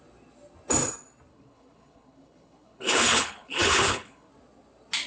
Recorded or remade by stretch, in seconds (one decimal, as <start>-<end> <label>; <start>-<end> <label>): 0.0-1.3 recorded; 1.3-4.3 remade; 4.3-5.1 recorded